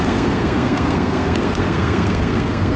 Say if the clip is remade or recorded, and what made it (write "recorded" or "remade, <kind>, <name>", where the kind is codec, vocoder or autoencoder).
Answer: remade, codec, SNAC